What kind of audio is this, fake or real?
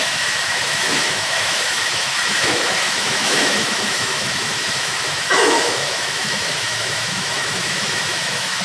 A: fake